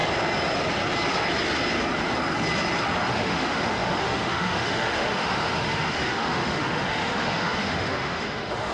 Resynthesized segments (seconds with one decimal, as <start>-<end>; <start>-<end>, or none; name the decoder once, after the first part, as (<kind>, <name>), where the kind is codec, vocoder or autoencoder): 3.1-8.7 (autoencoder, DAC-VAE)